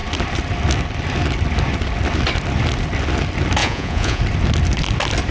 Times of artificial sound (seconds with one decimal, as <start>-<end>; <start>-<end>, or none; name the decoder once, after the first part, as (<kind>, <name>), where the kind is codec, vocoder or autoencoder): 3.6-4.2 (vocoder, Vocos)